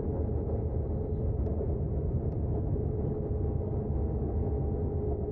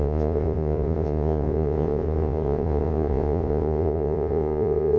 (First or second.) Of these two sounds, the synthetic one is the second